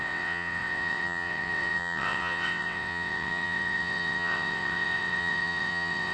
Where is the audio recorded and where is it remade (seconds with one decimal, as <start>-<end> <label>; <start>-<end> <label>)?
0.0-6.1 remade